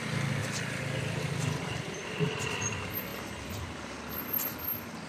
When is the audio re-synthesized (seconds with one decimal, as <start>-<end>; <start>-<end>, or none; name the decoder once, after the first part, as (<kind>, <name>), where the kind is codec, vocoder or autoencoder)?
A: none